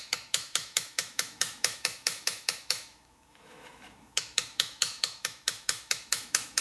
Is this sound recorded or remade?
remade